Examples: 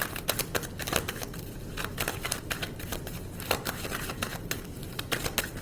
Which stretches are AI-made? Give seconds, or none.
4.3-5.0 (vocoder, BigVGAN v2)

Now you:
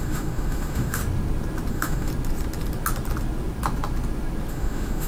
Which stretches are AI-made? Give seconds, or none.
0.0-1.0 (autoencoder, DAC-VAE); 1.7-2.1; 4.5-5.1